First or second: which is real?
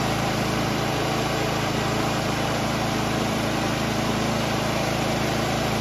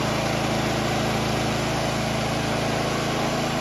second